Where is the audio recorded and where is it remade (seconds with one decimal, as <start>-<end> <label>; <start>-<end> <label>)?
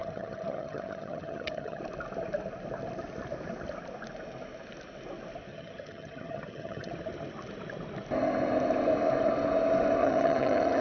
0.0-1.8 remade; 1.8-5.5 recorded; 5.5-6.9 remade; 6.9-10.0 recorded; 10.0-10.8 remade